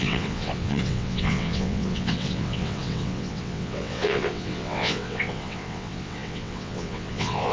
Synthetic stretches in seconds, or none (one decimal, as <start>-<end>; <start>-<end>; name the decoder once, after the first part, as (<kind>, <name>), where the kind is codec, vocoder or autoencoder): 0.0-7.5 (vocoder, WaveNeXt)